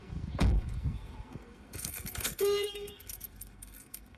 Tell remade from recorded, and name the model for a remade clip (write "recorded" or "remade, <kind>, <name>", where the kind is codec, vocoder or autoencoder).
remade, codec, SNAC